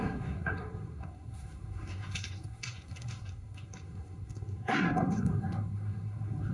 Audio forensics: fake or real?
fake